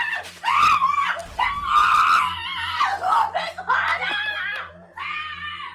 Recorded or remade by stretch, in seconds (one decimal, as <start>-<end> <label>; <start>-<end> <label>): 0.0-5.7 recorded